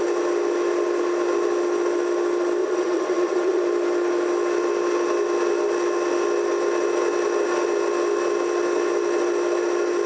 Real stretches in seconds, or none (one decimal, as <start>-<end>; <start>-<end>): 0.0-2.6; 3.6-10.1